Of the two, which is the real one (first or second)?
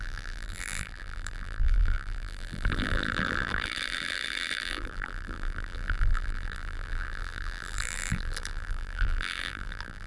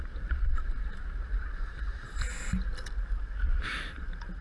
second